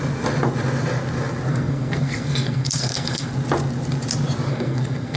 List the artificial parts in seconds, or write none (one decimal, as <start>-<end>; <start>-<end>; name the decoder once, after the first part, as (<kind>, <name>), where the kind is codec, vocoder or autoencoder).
1.5-3.3 (codec, SNAC); 4.5-5.2